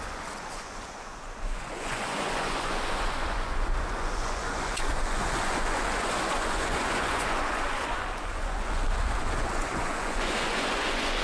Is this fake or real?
fake